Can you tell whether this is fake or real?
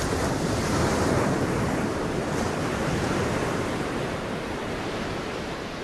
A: fake